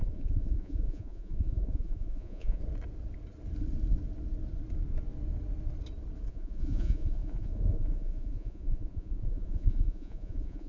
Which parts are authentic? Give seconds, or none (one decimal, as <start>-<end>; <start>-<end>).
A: 2.6-6.3